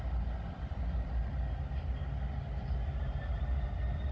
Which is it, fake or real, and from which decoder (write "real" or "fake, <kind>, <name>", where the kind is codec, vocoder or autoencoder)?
real